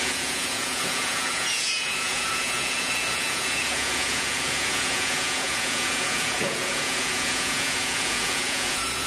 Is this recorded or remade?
remade